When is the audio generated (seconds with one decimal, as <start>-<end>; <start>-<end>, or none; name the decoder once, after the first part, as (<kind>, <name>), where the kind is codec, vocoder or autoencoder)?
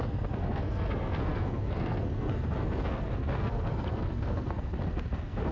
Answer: 0.0-5.5 (codec, SNAC)